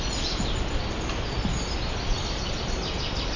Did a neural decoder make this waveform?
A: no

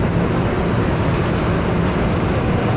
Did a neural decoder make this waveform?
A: no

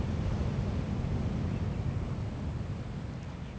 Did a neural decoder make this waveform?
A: no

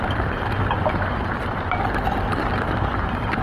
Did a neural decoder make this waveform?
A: no